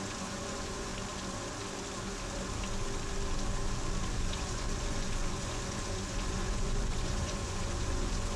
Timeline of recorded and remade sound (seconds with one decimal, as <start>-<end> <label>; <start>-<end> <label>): 0.0-0.9 remade; 0.9-4.1 recorded; 4.1-8.4 remade

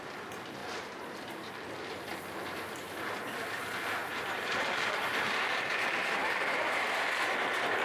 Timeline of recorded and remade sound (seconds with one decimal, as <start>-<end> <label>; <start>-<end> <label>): 0.0-0.6 recorded; 0.6-1.5 remade; 1.5-4.0 recorded; 4.0-7.0 remade; 7.0-7.8 recorded

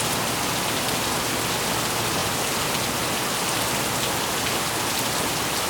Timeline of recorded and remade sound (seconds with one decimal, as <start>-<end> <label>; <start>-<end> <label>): 0.0-5.7 recorded